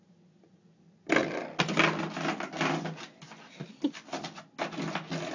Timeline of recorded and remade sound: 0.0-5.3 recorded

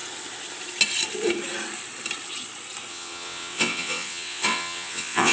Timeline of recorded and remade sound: 0.0-2.9 recorded; 2.9-5.3 remade

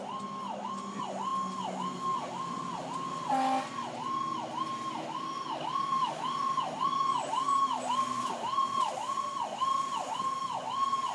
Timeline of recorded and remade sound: 0.0-11.1 recorded

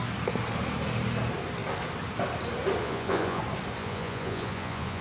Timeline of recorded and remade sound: 0.0-2.8 recorded; 2.8-3.4 remade; 3.4-3.8 recorded; 3.8-5.0 remade

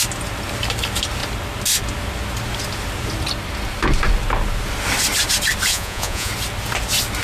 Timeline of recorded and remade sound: 0.0-5.7 recorded; 5.7-6.3 remade; 6.3-7.2 recorded

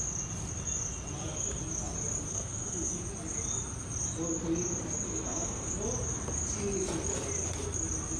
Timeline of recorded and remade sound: 0.0-2.3 recorded; 2.3-3.0 remade; 3.0-5.1 recorded; 5.1-5.7 remade; 5.7-8.2 recorded